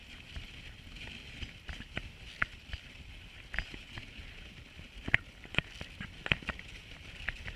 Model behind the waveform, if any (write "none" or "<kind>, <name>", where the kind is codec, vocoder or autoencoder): none